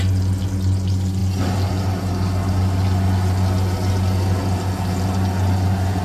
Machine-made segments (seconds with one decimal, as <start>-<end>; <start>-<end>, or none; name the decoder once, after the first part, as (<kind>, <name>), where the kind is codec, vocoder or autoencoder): none